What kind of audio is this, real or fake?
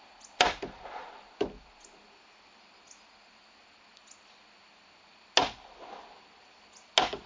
real